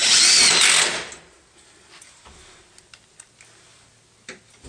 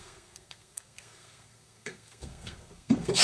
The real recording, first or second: first